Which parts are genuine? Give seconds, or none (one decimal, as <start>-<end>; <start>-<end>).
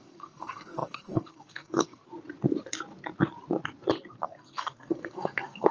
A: 2.0-4.2